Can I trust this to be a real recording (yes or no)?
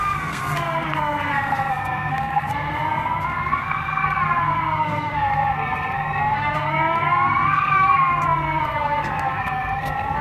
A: no